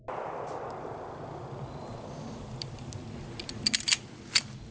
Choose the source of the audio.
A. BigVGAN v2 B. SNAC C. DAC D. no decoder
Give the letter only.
D